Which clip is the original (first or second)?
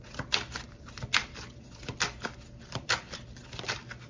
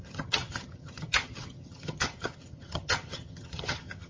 first